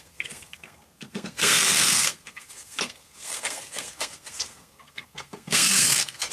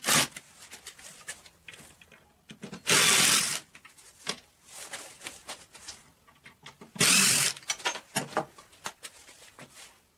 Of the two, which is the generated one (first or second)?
first